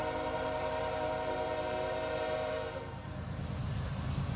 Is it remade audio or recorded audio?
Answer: remade